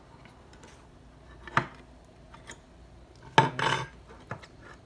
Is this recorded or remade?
recorded